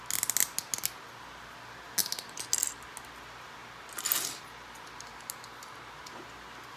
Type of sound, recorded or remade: recorded